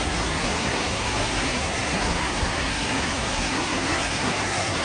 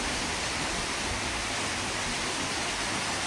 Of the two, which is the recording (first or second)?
second